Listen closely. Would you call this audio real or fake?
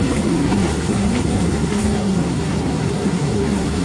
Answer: fake